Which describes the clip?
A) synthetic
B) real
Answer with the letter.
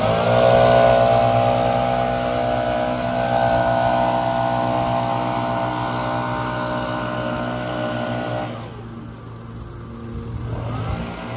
B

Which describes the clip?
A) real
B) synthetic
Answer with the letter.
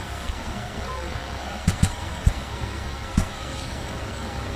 B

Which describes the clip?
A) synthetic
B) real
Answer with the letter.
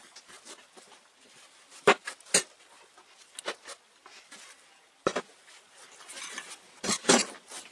B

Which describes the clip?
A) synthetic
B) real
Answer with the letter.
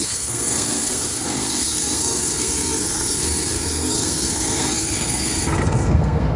A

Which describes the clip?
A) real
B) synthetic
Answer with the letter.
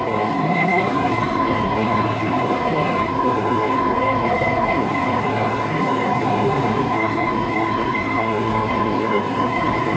B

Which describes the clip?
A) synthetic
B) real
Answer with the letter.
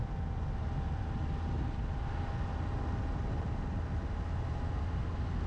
B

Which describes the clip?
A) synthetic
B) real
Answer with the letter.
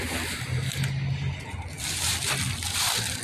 B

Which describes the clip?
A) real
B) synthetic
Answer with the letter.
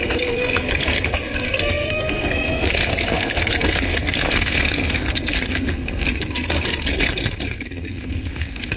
B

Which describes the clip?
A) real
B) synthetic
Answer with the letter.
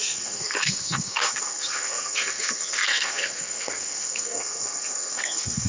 B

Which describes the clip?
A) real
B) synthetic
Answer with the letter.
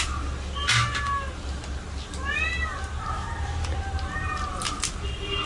A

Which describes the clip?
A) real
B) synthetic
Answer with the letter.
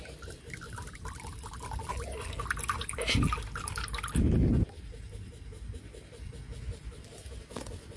A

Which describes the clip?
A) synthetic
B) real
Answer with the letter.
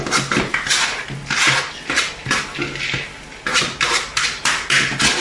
B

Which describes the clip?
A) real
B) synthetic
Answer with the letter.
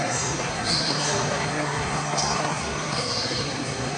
B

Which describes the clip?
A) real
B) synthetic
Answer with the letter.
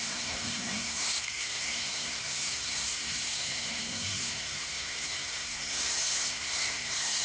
B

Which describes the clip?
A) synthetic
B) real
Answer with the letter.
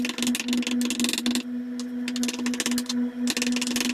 B